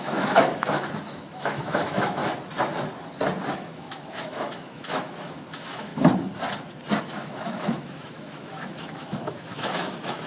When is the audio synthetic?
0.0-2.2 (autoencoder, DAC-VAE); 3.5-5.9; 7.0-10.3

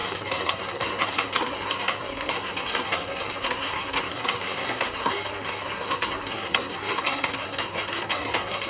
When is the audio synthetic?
0.0-8.7 (codec, SNAC)

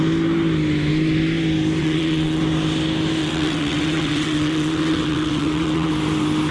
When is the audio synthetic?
1.8-2.4 (vocoder, WaveNeXt); 3.2-5.9

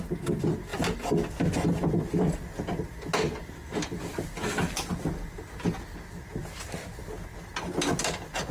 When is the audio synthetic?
3.4-5.8 (vocoder, BigVGAN v2)

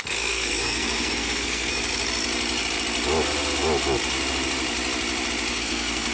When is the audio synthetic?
0.0-1.8 (codec, SNAC); 5.5-6.1

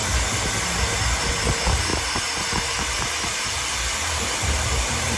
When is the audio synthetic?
1.3-5.2 (vocoder, BigVGAN v2)